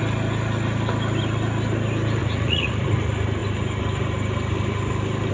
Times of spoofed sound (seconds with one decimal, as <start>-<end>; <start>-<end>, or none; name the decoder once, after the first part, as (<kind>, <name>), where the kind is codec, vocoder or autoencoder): 2.2-2.7 (vocoder, Vocos)

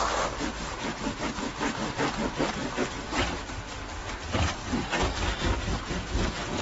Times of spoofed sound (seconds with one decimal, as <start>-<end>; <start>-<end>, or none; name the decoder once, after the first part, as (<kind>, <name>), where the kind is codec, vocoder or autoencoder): none

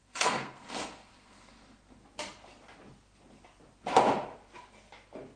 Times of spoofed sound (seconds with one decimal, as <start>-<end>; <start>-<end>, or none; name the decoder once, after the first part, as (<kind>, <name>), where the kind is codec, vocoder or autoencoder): 0.0-2.0 (codec, SNAC)

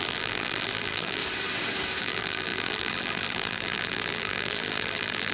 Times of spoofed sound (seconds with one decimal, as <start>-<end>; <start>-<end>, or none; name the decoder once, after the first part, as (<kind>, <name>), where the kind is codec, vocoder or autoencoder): 0.0-1.2 (vocoder, BigVGAN v2); 2.0-5.3

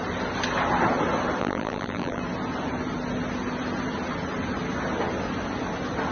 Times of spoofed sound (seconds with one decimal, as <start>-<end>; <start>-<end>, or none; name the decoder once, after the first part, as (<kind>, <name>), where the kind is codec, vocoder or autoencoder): 1.4-2.2 (vocoder, BigVGAN v2)